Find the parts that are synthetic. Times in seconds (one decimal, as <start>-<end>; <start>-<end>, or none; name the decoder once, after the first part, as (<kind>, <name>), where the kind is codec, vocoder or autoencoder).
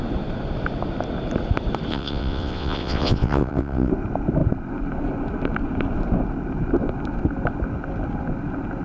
1.9-3.9 (vocoder, WaveNeXt)